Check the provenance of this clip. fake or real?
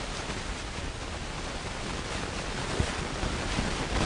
real